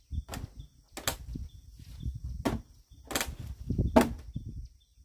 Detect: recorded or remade recorded